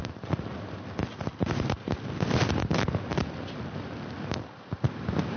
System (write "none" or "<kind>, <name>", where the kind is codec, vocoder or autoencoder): none